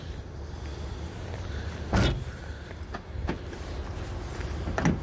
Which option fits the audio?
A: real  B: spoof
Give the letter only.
A